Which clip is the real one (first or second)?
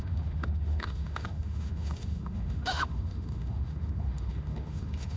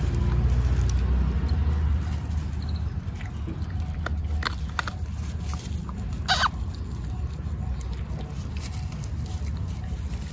second